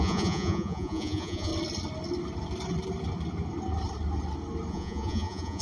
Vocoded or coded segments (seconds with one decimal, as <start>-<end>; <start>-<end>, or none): 0.0-1.5; 4.7-5.6